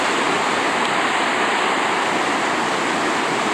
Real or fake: real